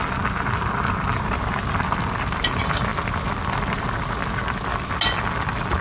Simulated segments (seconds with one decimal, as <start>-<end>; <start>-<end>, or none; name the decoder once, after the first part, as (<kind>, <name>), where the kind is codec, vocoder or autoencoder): none